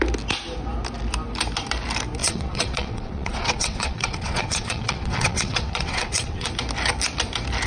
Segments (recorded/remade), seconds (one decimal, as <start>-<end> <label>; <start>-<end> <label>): 0.0-2.2 recorded; 2.2-6.5 remade; 6.5-7.7 recorded